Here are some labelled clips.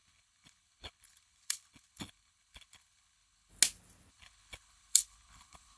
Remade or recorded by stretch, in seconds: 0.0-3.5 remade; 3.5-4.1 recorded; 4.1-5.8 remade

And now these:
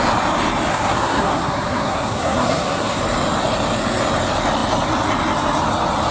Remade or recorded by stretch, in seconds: 0.0-0.7 recorded; 0.7-3.0 remade; 3.0-6.1 recorded

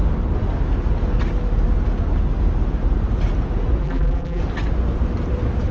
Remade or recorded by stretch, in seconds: 0.0-3.8 recorded; 3.8-4.4 remade; 4.4-5.7 recorded

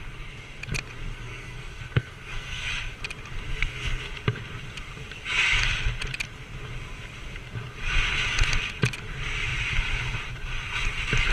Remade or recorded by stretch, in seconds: 0.0-1.1 recorded; 1.1-2.7 remade; 2.7-3.5 recorded; 3.5-4.1 remade; 4.1-11.3 recorded

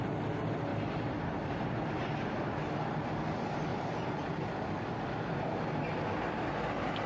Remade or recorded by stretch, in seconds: 0.0-7.1 recorded

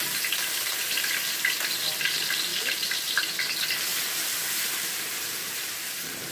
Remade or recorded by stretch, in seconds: 0.0-2.5 recorded; 2.5-3.2 remade; 3.2-3.9 recorded; 3.9-6.3 remade

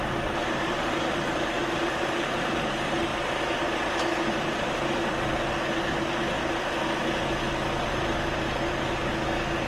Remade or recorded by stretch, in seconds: 0.0-4.8 remade; 4.8-7.8 recorded; 7.8-9.0 remade; 9.0-9.7 recorded